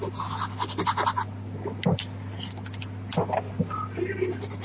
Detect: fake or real real